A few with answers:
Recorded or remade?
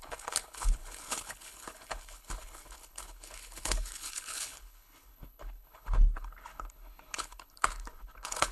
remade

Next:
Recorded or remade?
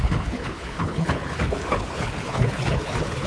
remade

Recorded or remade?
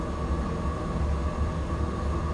recorded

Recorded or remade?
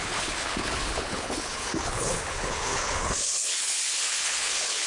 remade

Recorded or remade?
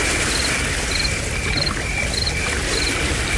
recorded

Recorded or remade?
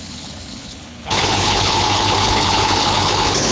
remade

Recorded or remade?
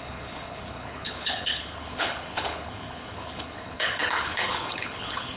remade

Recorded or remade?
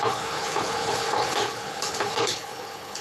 remade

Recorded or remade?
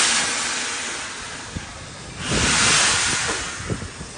recorded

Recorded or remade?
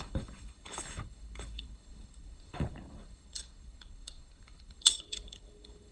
remade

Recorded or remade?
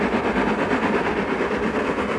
recorded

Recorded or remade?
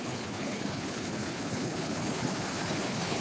remade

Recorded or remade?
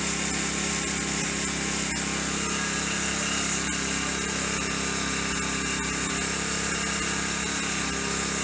recorded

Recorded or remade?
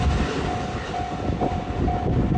recorded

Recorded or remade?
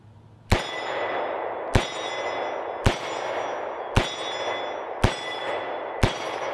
recorded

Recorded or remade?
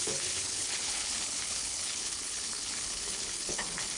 remade